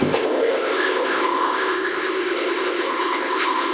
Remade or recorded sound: remade